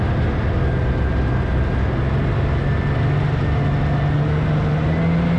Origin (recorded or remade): recorded